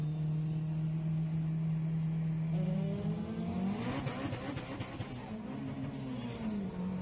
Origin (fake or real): real